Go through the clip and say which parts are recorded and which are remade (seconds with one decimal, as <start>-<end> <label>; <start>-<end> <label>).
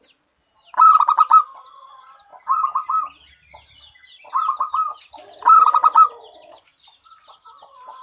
0.0-8.0 recorded